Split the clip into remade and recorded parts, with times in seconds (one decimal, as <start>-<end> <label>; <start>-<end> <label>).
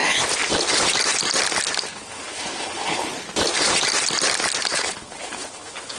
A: 0.0-1.9 recorded; 1.9-3.1 remade; 3.1-4.7 recorded; 4.7-6.0 remade